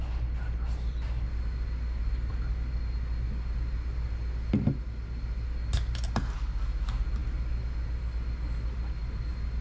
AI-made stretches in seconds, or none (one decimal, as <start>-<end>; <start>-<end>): none

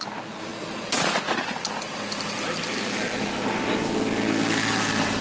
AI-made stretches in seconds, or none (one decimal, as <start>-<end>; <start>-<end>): none

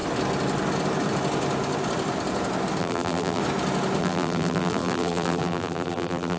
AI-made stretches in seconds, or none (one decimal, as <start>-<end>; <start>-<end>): 2.8-3.4; 4.0-6.4

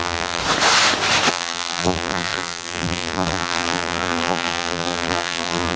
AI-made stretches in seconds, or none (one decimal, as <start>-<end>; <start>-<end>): 0.0-0.4; 1.3-5.8

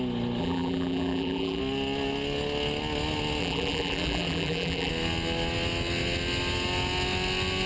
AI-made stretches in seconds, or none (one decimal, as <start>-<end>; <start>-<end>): 0.4-1.6; 3.4-4.9

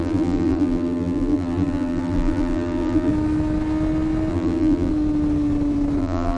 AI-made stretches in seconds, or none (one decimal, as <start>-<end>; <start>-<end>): 0.0-3.1; 4.3-4.9; 6.0-6.4

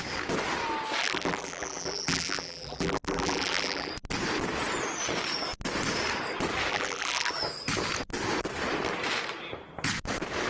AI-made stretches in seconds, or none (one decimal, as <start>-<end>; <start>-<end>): 1.0-3.9; 6.7-7.3

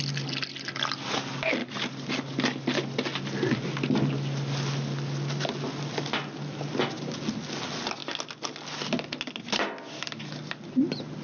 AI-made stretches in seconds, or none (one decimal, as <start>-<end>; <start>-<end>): 1.6-2.1